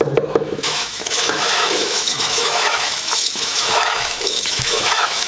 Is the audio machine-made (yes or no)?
yes